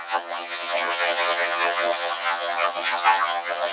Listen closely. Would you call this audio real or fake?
fake